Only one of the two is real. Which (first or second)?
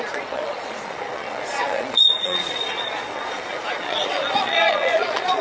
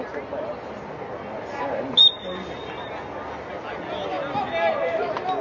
second